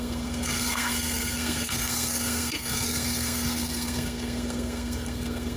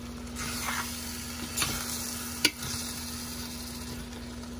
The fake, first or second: first